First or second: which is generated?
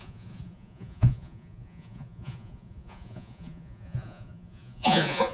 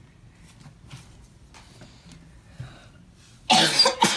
first